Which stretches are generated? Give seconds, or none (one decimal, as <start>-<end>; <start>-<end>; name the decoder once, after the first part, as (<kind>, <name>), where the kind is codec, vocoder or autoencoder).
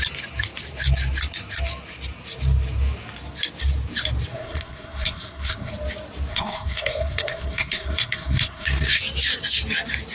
4.3-5.7 (codec, SNAC); 6.3-9.0